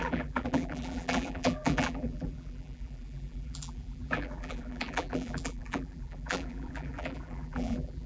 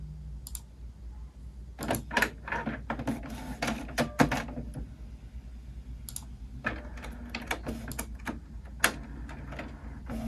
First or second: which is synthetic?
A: first